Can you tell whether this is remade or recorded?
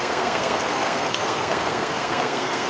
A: remade